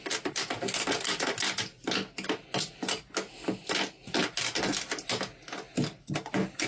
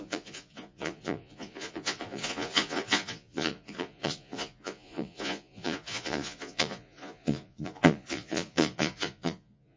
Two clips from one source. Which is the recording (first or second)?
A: first